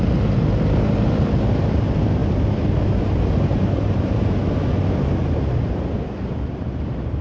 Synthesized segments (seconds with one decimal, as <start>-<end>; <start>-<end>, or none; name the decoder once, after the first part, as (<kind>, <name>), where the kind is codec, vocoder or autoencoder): 3.5-4.3 (vocoder, BigVGAN v2)